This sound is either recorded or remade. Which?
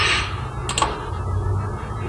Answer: recorded